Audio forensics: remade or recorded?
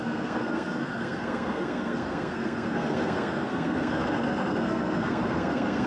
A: remade